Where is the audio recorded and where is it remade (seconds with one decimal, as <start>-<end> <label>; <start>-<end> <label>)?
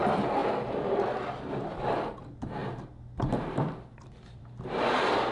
0.0-2.6 remade; 2.6-3.4 recorded; 3.4-5.3 remade